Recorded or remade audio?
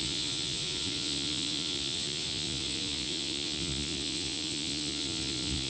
remade